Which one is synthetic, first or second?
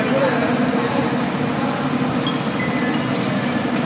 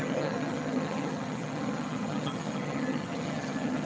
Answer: second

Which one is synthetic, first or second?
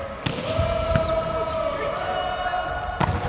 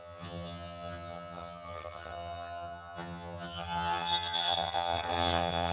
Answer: second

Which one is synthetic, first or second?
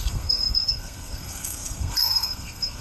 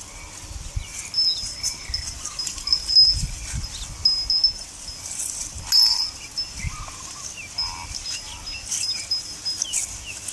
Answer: first